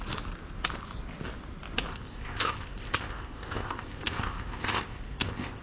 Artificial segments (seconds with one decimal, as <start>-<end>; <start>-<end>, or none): 1.9-5.6